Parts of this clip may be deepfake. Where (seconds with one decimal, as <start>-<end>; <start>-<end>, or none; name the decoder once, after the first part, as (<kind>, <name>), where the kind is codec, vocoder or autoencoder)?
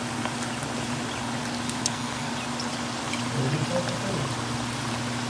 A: 1.8-2.3 (codec, SNAC)